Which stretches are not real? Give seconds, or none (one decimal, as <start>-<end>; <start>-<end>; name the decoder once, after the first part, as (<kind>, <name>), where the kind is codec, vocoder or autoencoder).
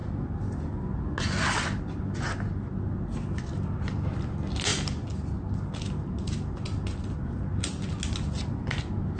none